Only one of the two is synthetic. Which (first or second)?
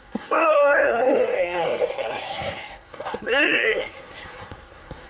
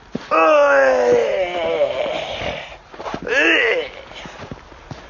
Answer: first